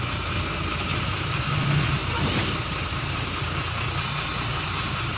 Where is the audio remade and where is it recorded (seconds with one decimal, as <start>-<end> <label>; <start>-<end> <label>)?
0.0-0.9 recorded; 0.9-1.6 remade; 1.6-5.2 recorded